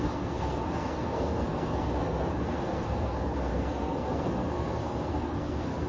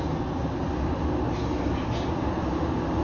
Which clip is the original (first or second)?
second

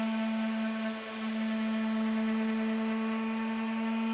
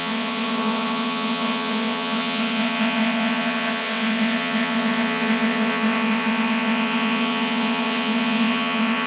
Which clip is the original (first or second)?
first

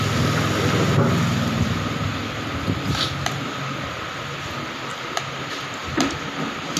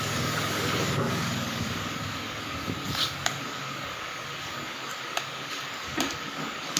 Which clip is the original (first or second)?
first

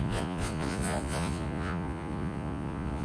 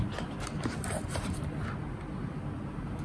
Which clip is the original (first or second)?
second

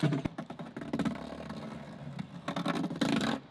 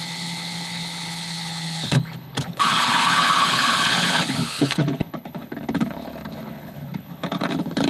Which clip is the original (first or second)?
first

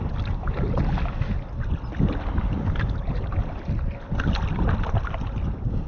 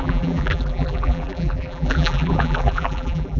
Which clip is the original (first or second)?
first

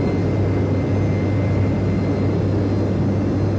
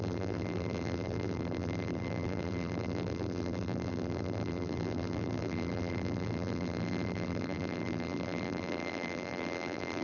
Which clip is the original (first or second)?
first